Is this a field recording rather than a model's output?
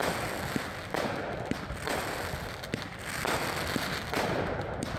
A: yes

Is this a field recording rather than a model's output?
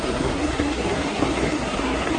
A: no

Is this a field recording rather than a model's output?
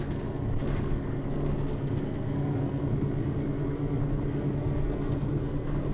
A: no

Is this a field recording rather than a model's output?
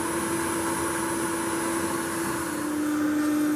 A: yes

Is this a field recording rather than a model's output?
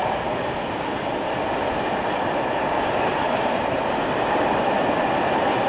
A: yes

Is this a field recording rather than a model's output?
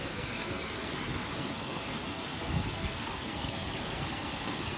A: no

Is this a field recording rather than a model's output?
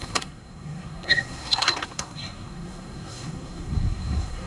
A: no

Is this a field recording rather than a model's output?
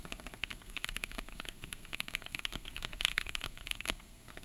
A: no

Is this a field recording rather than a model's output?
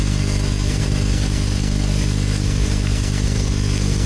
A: no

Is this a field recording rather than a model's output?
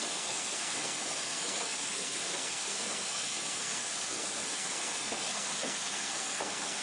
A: no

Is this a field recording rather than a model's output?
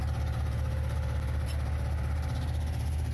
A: yes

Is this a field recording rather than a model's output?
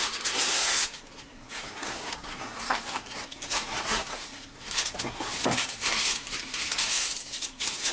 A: no